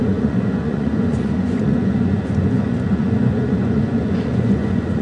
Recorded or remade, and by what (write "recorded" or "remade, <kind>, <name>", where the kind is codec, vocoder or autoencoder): remade, vocoder, Vocos